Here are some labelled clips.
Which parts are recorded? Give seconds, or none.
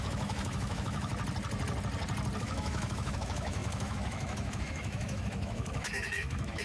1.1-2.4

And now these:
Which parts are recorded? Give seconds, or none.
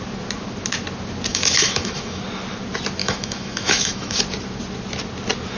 0.0-1.3; 2.2-3.0; 4.2-5.6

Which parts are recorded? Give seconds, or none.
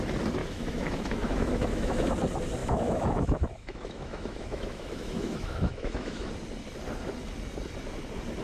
0.0-0.4; 2.1-2.6; 6.3-8.4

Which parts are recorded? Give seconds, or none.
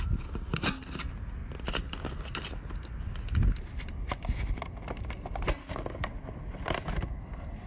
0.0-7.7